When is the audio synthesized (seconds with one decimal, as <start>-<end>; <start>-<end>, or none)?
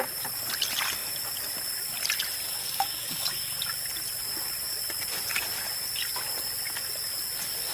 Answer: 2.6-3.4